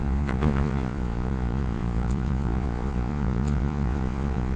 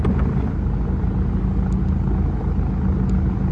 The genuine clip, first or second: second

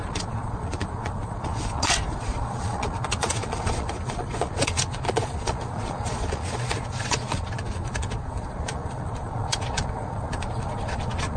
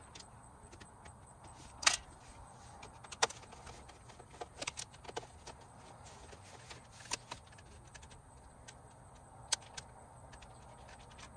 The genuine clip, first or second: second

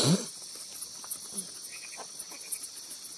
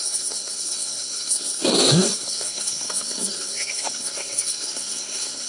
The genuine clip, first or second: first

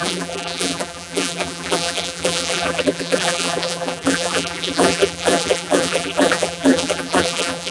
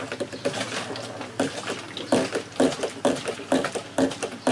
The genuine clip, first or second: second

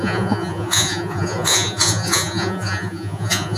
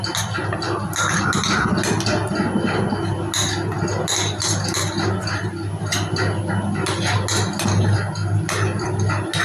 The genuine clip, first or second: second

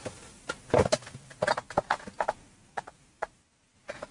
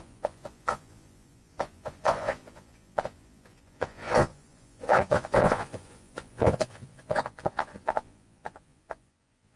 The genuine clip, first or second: first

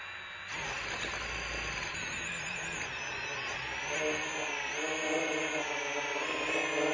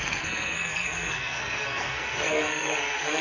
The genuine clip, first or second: first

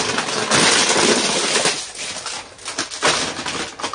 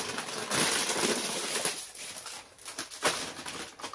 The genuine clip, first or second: first